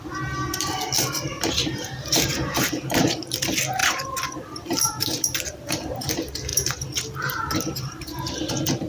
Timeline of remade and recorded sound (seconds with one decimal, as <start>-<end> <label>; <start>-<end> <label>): 0.0-1.3 recorded; 1.3-3.2 remade; 3.2-3.8 recorded; 3.8-6.1 remade; 6.1-6.5 recorded; 6.5-8.5 remade; 8.5-8.9 recorded